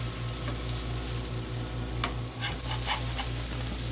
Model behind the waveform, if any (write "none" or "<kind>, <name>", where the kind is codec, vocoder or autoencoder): none